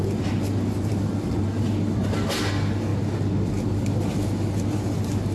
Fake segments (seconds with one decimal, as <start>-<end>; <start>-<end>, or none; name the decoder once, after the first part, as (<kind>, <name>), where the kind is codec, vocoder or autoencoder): none